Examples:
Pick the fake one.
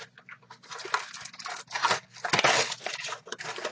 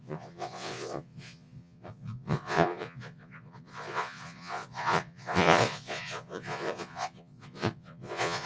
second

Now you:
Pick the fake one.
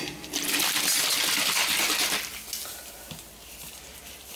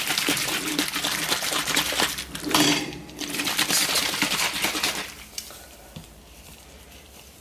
second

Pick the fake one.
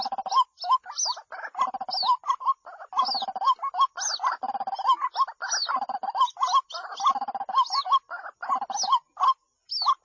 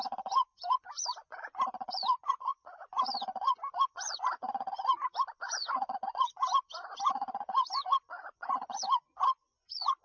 second